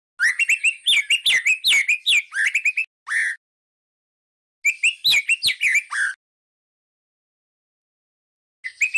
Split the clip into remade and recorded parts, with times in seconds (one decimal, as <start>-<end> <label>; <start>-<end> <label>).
0.0-9.0 recorded